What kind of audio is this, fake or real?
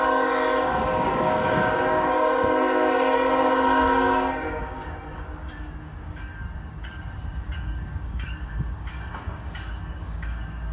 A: fake